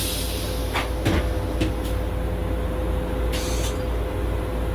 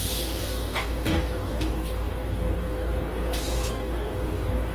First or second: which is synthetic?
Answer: second